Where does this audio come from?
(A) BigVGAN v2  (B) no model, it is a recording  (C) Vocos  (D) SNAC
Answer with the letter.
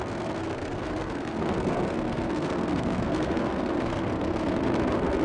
D